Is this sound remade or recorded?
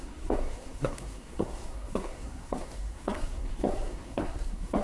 remade